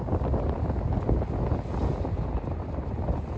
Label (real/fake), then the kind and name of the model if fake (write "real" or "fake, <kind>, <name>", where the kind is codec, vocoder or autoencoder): real